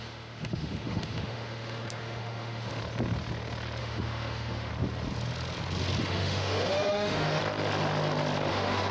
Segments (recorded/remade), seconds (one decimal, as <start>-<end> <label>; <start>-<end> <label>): 0.0-2.8 remade; 2.8-3.8 recorded; 3.8-4.7 remade; 4.7-6.0 recorded; 6.0-7.4 remade; 7.4-8.5 recorded; 8.5-8.9 remade